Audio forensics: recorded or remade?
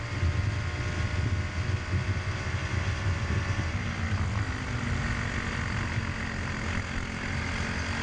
recorded